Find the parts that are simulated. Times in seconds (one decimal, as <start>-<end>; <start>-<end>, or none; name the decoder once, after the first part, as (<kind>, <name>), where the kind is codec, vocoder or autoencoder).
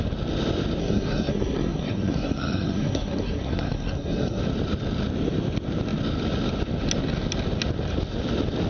0.8-4.4 (codec, SNAC)